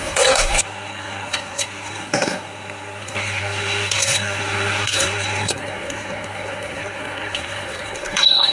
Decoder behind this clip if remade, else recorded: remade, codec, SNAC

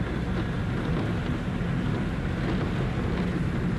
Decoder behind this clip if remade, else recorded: recorded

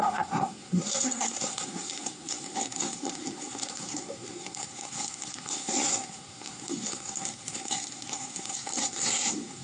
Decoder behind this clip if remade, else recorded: remade, codec, SNAC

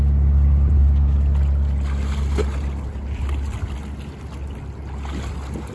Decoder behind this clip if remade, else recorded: recorded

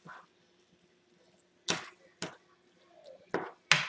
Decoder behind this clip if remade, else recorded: recorded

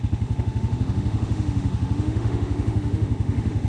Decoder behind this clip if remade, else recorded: remade, autoencoder, DAC-VAE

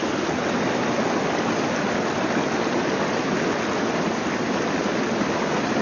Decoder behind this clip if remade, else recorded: recorded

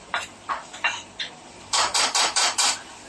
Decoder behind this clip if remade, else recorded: remade, vocoder, BigVGAN v2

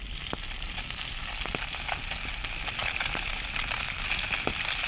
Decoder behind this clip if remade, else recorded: recorded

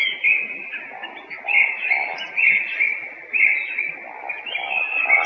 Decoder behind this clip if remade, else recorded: recorded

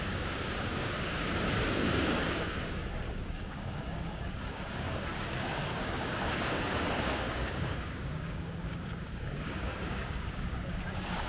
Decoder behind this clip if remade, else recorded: remade, codec, DAC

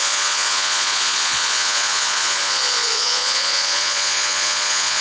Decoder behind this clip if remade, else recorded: remade, vocoder, Vocos